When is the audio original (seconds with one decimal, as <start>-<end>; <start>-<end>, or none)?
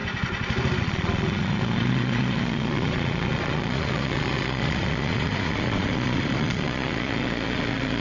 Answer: 0.0-0.8